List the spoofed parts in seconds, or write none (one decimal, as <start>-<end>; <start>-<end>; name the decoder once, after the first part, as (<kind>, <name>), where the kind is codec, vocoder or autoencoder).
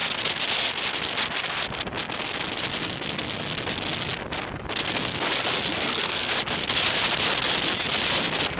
5.7-6.3 (codec, SNAC)